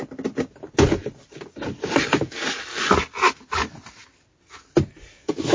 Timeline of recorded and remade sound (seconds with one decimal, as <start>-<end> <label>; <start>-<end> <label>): 0.0-5.5 recorded